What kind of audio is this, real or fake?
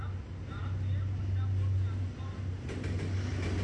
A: real